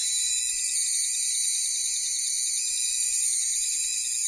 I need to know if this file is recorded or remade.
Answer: recorded